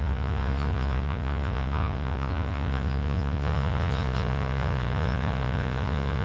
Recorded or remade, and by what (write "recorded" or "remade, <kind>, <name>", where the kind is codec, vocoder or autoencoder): remade, vocoder, Vocos